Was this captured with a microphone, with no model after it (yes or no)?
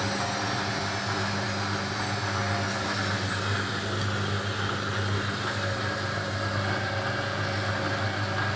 yes